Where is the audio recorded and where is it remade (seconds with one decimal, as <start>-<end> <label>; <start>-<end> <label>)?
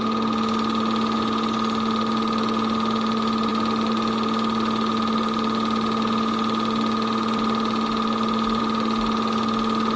0.0-10.0 recorded